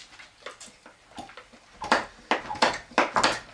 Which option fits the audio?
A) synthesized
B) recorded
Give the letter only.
B